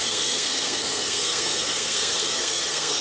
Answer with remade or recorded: remade